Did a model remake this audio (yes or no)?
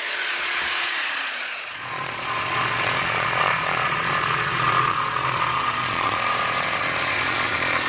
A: yes